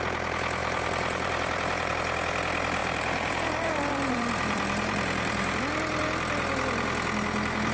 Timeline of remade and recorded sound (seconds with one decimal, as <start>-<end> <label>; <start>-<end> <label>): 0.0-0.6 recorded; 0.6-1.9 remade; 1.9-2.8 recorded; 2.8-5.6 remade; 5.6-7.7 recorded